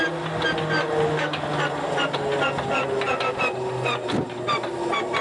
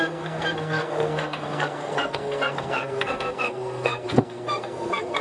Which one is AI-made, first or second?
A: second